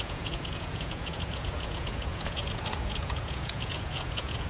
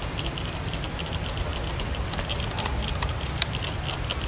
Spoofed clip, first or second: first